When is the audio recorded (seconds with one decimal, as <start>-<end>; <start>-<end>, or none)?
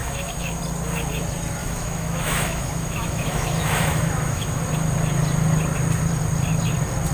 0.6-1.6; 4.6-7.1